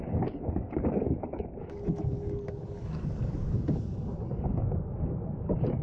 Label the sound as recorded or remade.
remade